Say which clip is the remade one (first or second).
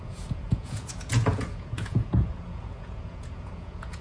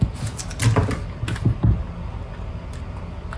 first